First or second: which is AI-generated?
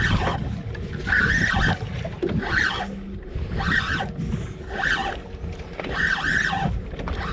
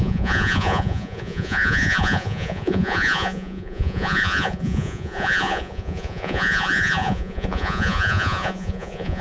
second